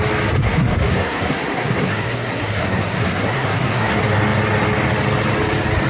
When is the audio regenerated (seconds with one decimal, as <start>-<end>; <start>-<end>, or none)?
0.4-3.9